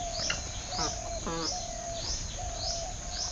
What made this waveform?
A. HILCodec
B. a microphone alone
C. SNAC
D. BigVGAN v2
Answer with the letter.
B